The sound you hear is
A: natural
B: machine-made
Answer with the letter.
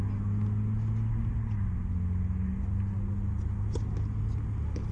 A